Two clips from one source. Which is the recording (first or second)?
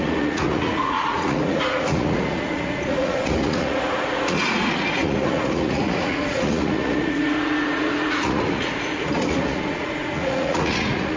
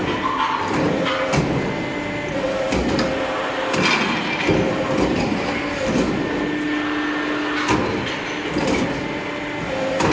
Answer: second